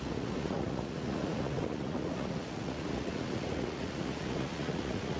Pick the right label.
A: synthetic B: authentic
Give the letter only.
A